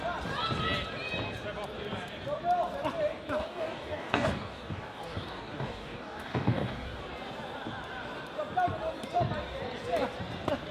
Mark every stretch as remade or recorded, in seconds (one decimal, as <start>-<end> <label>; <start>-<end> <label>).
0.0-3.4 recorded; 3.4-7.0 remade; 7.0-10.7 recorded

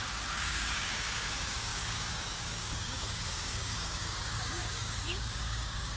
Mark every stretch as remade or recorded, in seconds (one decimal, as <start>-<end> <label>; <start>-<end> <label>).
0.0-6.0 remade

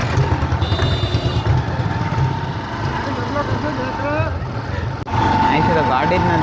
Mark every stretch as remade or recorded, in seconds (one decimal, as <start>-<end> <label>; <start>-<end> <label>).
0.0-5.1 recorded; 5.1-5.7 remade; 5.7-6.4 recorded

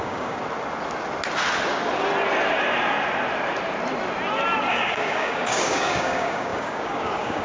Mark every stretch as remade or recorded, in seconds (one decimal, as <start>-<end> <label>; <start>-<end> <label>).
0.0-0.4 remade; 0.4-4.7 recorded; 4.7-7.4 remade

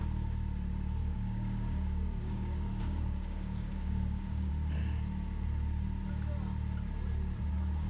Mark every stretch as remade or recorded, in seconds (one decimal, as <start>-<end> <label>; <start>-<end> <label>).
0.0-1.0 recorded; 1.0-4.5 remade; 4.5-7.9 recorded

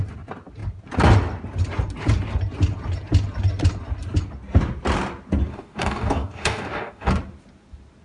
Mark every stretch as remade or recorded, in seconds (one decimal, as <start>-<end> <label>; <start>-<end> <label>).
0.0-5.5 recorded; 5.5-7.1 remade; 7.1-8.0 recorded